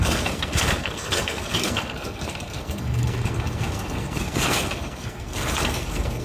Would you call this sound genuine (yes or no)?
no